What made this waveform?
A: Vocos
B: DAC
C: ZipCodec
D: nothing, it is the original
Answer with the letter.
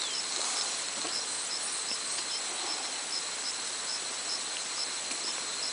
D